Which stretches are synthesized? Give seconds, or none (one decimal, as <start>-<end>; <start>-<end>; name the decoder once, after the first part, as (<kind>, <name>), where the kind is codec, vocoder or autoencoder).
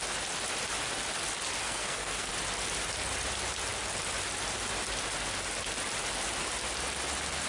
1.6-2.3 (codec, SNAC)